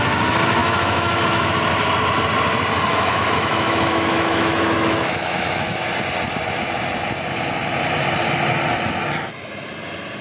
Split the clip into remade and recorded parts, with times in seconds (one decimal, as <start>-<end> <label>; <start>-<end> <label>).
0.0-0.6 recorded; 0.6-1.5 remade; 1.5-2.9 recorded; 2.9-5.8 remade; 5.8-10.2 recorded